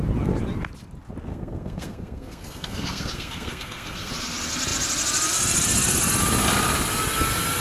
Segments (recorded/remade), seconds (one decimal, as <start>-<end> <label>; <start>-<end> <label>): 0.0-1.3 recorded; 1.3-4.1 remade; 4.1-7.6 recorded